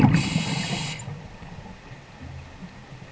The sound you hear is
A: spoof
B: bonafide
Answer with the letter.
B